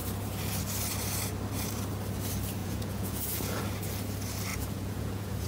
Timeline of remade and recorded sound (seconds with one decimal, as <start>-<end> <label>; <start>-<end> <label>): 0.0-2.6 recorded; 2.6-3.6 remade; 3.6-4.5 recorded; 4.5-5.5 remade